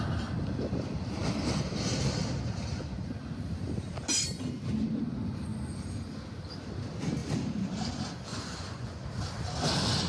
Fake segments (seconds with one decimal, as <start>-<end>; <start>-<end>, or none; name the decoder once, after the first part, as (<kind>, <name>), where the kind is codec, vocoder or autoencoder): 8.3-9.0 (vocoder, Vocos)